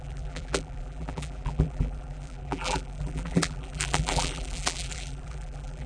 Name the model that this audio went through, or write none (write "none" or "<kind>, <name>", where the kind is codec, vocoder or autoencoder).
vocoder, BigVGAN v2